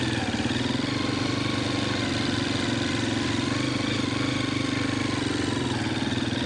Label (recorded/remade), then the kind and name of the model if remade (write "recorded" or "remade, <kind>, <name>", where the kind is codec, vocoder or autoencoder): recorded